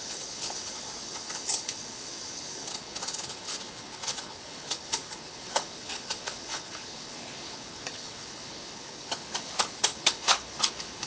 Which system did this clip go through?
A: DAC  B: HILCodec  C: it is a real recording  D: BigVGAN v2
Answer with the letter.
B